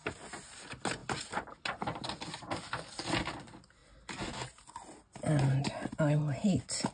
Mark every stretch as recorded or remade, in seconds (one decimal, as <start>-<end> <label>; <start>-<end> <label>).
0.0-6.9 recorded